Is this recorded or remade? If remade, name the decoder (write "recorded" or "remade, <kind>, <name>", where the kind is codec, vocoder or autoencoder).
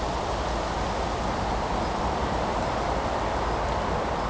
recorded